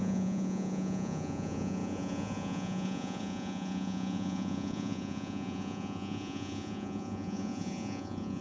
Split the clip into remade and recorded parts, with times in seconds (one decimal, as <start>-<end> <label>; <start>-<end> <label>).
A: 0.0-8.4 remade